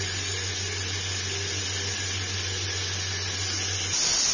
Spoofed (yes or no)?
no